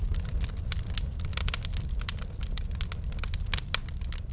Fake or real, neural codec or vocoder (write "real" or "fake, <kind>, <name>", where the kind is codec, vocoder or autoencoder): real